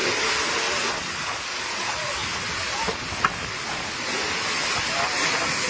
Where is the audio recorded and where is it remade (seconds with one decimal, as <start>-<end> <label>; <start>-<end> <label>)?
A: 0.0-5.7 recorded